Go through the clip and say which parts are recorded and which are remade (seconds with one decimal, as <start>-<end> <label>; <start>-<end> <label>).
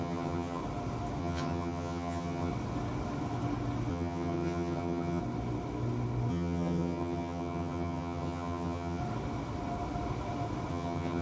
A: 0.0-0.6 remade; 0.6-1.2 recorded; 1.2-2.5 remade; 2.5-3.9 recorded; 3.9-5.2 remade; 5.2-6.3 recorded; 6.3-9.0 remade; 9.0-10.7 recorded; 10.7-11.2 remade